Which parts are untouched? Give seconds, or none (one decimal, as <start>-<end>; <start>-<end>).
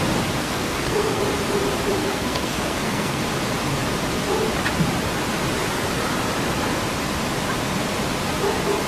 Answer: 0.0-0.4; 1.2-2.0; 3.2-8.9